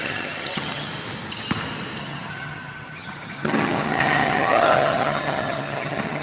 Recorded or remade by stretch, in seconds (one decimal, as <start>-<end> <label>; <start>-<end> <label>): 0.0-0.9 remade; 0.9-2.0 recorded; 2.0-6.2 remade